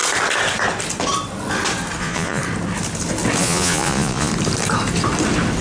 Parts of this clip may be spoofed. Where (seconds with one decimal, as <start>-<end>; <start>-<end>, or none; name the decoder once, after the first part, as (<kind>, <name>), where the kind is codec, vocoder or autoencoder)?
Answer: 2.0-2.4 (vocoder, Vocos); 3.4-4.3